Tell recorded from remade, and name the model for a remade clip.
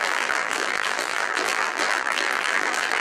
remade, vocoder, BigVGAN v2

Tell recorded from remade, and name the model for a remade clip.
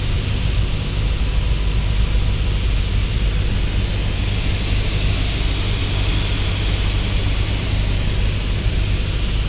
recorded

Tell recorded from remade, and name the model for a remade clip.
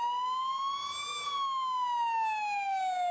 recorded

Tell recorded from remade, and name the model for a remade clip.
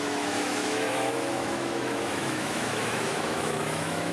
remade, autoencoder, DAC-VAE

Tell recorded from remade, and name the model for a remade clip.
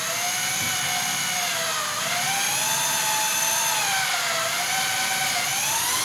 recorded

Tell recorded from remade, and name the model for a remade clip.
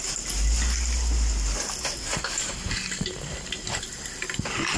recorded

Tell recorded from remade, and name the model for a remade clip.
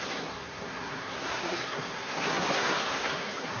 remade, codec, SNAC